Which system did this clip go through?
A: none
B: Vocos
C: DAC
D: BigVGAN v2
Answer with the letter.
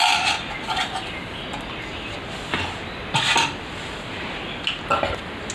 A